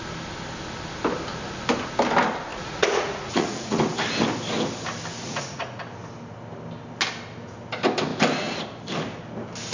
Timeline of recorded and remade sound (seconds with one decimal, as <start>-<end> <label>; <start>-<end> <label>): 0.0-2.5 recorded; 2.5-3.8 remade; 3.8-5.2 recorded; 5.2-5.8 remade; 5.8-9.7 recorded